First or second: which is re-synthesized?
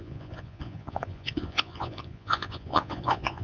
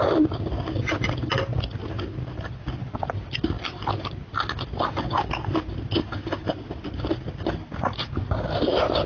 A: first